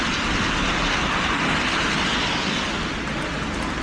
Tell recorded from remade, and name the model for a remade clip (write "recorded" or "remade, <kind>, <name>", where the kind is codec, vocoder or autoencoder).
recorded